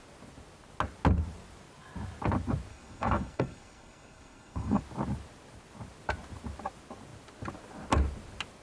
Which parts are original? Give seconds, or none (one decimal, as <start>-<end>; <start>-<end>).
0.0-2.7; 4.8-8.6